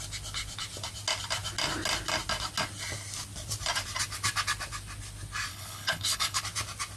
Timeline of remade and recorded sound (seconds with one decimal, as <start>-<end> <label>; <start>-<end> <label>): 0.0-5.5 recorded; 5.5-6.4 remade; 6.4-7.0 recorded